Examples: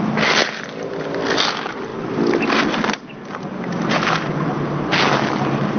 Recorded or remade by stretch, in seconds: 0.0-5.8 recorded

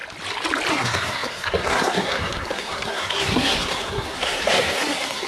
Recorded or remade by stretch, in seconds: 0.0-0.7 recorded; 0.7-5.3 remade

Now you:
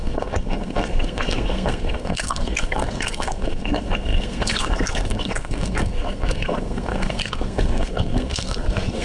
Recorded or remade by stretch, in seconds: 0.0-9.0 remade